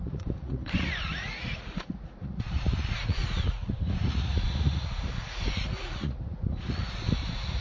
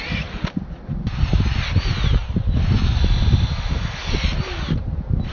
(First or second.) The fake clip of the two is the first